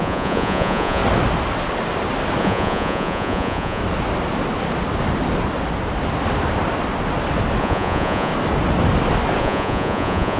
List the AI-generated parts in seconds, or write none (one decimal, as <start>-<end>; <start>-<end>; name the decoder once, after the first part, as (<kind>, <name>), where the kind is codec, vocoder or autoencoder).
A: 0.0-1.0 (vocoder, Vocos); 2.4-3.8; 7.6-8.3; 9.4-10.4